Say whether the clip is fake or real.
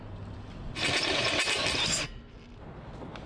real